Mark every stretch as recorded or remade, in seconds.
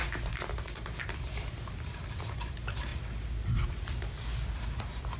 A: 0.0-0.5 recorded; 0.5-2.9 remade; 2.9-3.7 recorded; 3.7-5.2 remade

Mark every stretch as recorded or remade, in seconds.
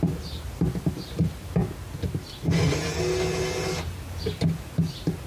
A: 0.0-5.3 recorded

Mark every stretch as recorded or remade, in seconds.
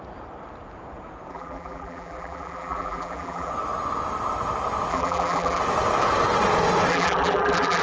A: 0.0-1.3 recorded; 1.3-3.5 remade; 3.5-4.9 recorded; 4.9-5.6 remade; 5.6-6.9 recorded; 6.9-7.8 remade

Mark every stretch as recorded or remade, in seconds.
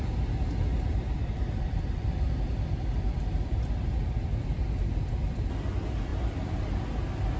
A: 0.0-0.7 recorded; 0.7-5.1 remade; 5.1-7.4 recorded